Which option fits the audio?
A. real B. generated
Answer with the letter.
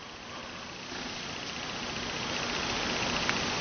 A